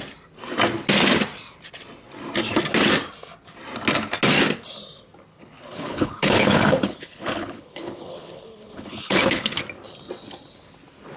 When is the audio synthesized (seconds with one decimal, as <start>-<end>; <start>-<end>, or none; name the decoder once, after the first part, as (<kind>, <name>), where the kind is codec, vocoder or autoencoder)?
5.3-9.6 (codec, HILCodec)